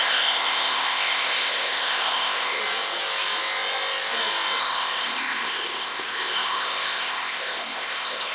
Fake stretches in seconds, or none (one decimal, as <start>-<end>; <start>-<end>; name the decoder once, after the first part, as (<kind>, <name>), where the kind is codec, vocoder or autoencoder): 0.0-2.6 (codec, ZipCodec); 4.6-8.3